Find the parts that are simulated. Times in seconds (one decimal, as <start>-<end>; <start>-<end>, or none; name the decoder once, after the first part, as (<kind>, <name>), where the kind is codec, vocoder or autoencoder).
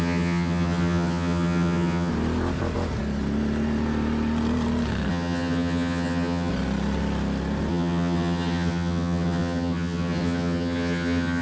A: 0.0-2.1 (vocoder, HiFi-GAN); 5.1-6.5; 7.7-11.4